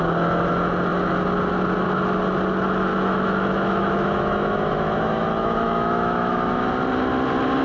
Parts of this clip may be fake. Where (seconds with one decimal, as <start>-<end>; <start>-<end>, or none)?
2.9-6.7